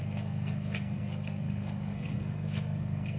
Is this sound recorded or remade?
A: remade